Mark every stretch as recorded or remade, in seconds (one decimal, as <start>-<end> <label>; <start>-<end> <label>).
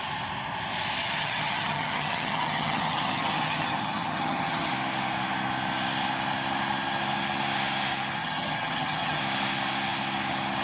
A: 0.0-1.0 recorded; 1.0-4.7 remade; 4.7-8.2 recorded; 8.2-9.2 remade; 9.2-10.6 recorded